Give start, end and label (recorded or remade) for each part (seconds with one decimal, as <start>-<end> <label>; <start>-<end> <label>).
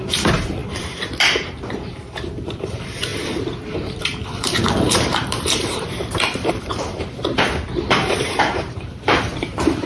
0.0-0.6 remade; 0.6-2.2 recorded; 2.2-9.9 remade